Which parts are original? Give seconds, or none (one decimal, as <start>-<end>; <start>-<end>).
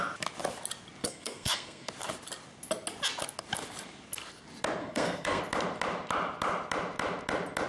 0.0-1.0; 1.9-4.8; 5.4-7.7